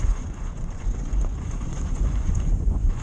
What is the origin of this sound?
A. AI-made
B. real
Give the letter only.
A